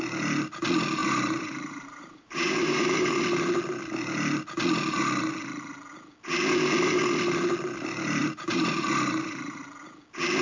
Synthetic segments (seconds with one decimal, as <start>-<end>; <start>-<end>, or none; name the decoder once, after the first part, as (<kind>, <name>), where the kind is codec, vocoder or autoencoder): 1.0-3.2 (vocoder, BigVGAN v2); 8.2-9.6